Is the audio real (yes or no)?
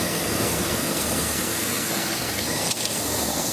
no